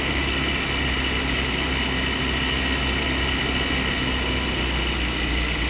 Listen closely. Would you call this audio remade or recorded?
recorded